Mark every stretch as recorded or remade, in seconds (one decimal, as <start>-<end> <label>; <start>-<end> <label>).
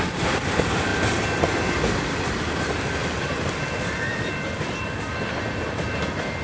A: 0.0-0.9 recorded; 0.9-2.5 remade; 2.5-3.0 recorded; 3.0-4.9 remade; 4.9-6.4 recorded